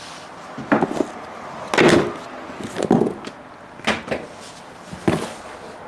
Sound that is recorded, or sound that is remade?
recorded